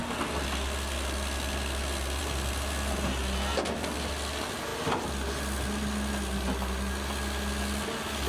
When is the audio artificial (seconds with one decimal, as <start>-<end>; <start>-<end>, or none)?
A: none